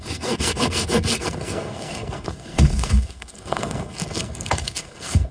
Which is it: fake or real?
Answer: fake